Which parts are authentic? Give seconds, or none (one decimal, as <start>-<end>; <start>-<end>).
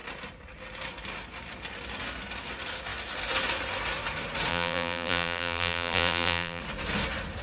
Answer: 0.0-4.5; 6.6-7.4